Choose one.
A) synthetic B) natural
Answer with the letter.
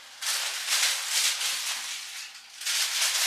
B